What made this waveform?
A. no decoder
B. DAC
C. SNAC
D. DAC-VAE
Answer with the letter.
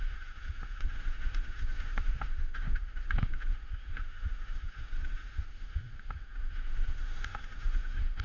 D